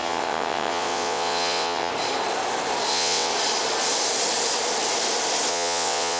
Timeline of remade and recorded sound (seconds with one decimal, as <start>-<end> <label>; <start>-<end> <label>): 0.0-1.9 remade; 1.9-2.9 recorded; 2.9-3.3 remade; 3.3-5.5 recorded; 5.5-6.2 remade